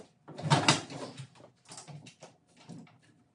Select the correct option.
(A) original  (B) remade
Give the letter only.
A